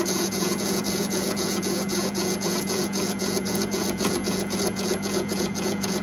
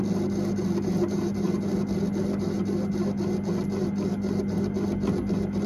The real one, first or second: second